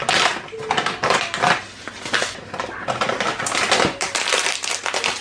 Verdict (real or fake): real